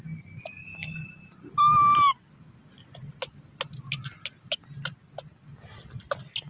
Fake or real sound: real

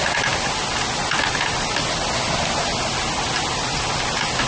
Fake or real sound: real